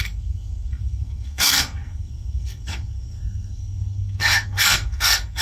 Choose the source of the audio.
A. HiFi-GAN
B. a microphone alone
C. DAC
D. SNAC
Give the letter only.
D